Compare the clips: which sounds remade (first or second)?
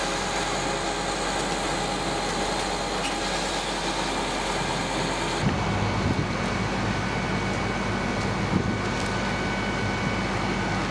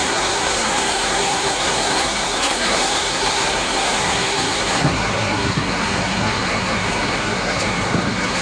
second